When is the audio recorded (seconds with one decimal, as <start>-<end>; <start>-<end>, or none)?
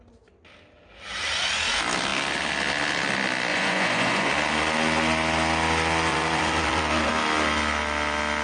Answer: 0.0-3.5; 4.3-6.1; 7.1-8.4